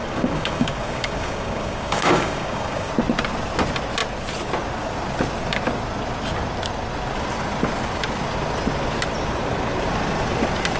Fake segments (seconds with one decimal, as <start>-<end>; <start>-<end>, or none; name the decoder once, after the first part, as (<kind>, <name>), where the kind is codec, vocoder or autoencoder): 0.0-2.9 (codec, DAC)